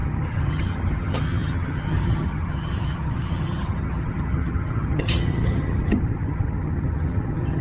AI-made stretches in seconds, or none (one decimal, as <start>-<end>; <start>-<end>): 0.0-7.6